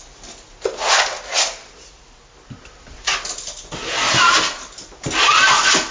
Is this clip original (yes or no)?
yes